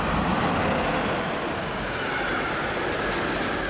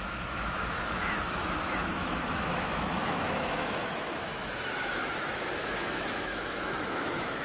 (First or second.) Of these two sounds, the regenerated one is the second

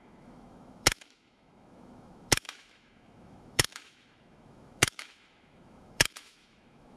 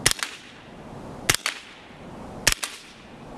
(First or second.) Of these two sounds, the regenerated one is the first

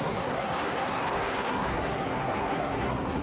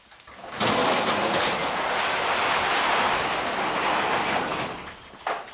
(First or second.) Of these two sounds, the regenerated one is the first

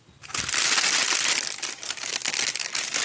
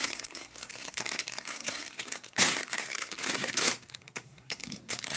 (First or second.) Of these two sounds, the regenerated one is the second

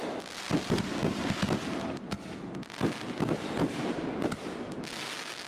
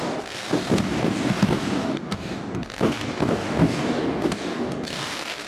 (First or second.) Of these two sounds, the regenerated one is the second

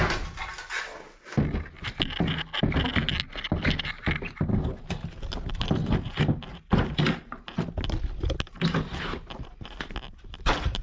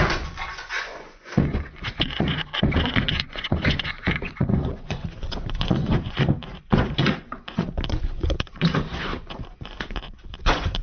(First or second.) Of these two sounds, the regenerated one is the second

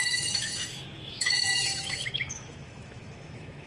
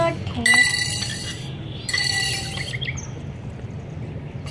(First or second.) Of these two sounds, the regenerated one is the first